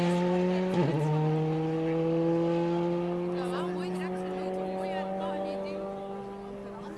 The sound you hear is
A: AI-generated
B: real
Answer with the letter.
B